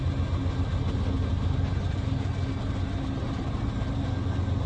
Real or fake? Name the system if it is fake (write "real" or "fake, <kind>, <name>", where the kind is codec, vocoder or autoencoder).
real